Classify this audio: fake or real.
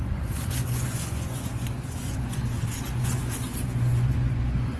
fake